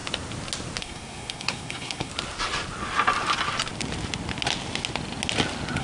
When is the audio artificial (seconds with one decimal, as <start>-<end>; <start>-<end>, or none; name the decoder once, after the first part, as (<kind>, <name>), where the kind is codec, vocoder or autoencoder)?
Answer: 0.8-2.1 (codec, SNAC)